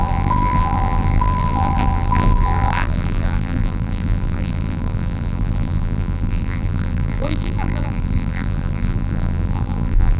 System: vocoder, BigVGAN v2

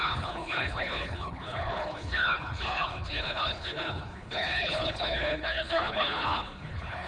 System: codec, HILCodec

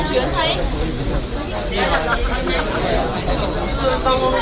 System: none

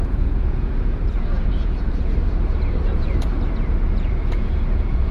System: vocoder, Vocos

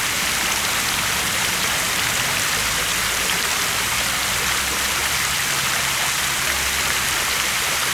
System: none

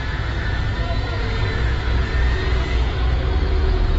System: vocoder, Vocos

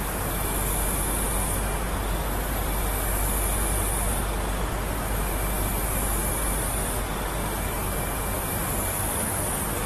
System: none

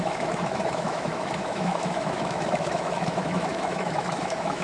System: autoencoder, DAC-VAE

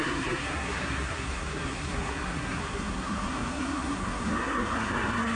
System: codec, SNAC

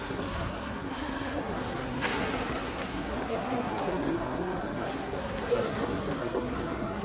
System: codec, SNAC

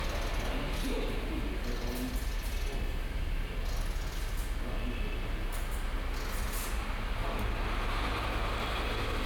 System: none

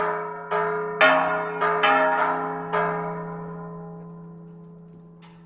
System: none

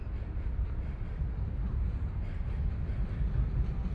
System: none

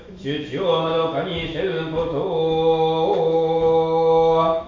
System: autoencoder, DAC-VAE